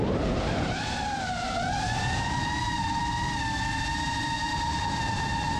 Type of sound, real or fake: fake